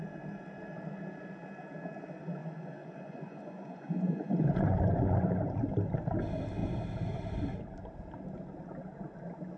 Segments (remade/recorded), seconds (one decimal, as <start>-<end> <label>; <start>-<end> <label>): 0.0-2.4 recorded; 2.4-5.6 remade; 5.6-9.6 recorded

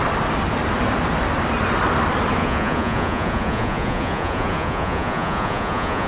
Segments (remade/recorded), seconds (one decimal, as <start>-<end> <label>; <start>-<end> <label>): 0.0-2.4 recorded; 2.4-6.1 remade

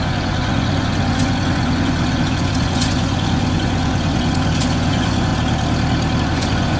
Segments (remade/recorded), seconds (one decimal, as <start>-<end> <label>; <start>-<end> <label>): 0.0-5.3 remade; 5.3-6.2 recorded; 6.2-6.8 remade

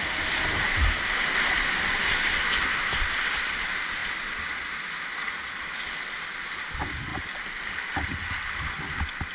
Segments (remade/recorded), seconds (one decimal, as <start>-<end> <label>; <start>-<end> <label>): 0.0-9.3 recorded

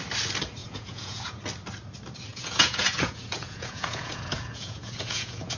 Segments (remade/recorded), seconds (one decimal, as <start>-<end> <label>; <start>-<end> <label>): 0.0-0.6 recorded; 0.6-1.4 remade; 1.4-2.3 recorded; 2.3-5.6 remade